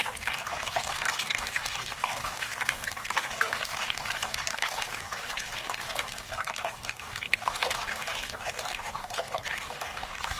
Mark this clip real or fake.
fake